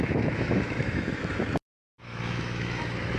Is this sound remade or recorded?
remade